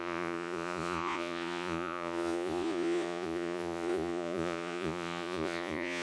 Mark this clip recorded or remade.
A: remade